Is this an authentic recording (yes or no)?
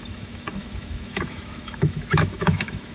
no